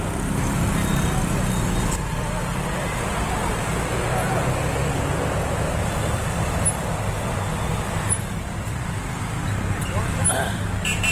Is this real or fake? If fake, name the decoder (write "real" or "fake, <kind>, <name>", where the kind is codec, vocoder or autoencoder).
real